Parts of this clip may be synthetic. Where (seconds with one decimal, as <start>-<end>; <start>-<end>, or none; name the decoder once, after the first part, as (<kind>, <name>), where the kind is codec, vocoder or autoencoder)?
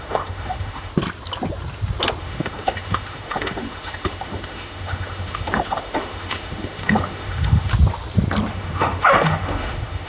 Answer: 0.0-0.9 (autoencoder, DAC-VAE); 2.2-7.7; 8.5-10.1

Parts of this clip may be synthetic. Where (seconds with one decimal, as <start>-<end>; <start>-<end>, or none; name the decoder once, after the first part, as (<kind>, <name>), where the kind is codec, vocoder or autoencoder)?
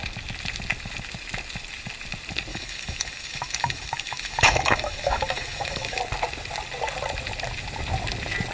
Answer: 2.5-6.0 (autoencoder, DAC-VAE)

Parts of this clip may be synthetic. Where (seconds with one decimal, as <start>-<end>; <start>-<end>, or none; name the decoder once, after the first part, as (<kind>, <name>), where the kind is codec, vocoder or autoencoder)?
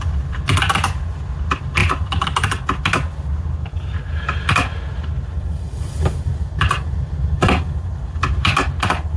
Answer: none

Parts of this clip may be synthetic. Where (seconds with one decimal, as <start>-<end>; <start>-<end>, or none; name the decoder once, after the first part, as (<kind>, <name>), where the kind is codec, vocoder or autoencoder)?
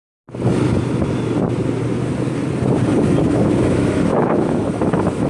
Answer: 3.2-5.3 (autoencoder, DAC-VAE)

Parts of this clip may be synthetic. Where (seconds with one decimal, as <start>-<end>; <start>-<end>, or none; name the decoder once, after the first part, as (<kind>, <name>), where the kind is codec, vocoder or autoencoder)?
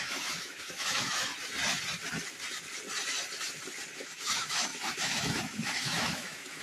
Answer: 0.0-1.3 (autoencoder, DAC-VAE); 3.9-6.6